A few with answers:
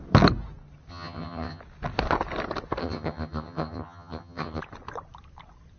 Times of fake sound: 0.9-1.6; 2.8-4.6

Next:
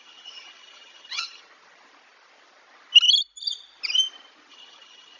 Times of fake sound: 0.0-1.4; 4.5-5.2

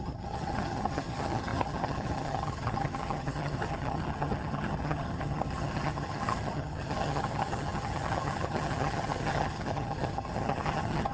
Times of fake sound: 0.0-11.1

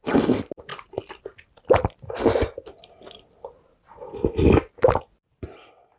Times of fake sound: none

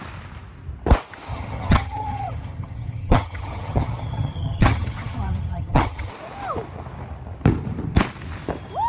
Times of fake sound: 1.3-6.1

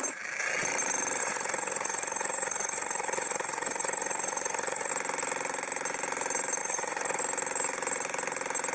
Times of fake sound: 1.2-4.9; 6.6-7.2